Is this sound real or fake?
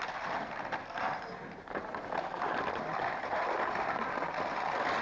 real